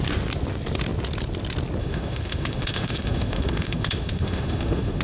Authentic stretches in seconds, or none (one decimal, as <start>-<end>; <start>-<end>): 0.0-1.8